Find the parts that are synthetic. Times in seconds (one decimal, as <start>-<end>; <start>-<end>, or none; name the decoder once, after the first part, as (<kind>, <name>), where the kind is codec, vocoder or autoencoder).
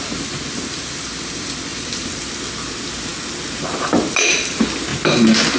1.7-2.3 (vocoder, BigVGAN v2)